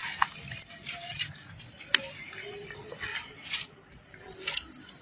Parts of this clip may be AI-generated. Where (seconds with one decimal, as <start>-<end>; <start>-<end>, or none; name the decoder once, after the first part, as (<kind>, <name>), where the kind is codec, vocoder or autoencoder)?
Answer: 0.0-2.7 (vocoder, BigVGAN v2); 3.1-4.2